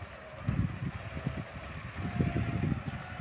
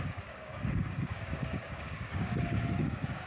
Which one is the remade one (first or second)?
second